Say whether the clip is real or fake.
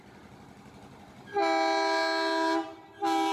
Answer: real